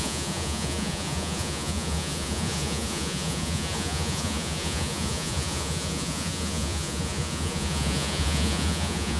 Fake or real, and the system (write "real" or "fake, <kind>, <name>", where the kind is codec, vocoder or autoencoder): fake, vocoder, Vocos